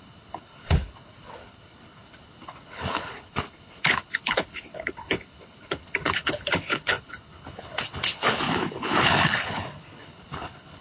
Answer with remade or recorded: remade